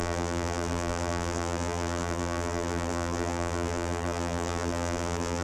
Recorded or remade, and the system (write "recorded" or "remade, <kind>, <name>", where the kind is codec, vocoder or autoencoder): remade, vocoder, BigVGAN v2